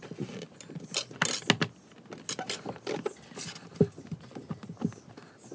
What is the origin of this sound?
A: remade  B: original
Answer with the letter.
B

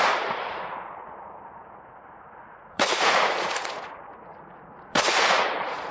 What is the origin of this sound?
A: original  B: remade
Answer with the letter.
B